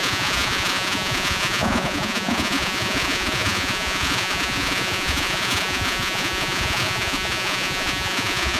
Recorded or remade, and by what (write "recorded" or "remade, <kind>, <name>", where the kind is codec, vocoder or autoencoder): remade, vocoder, Vocos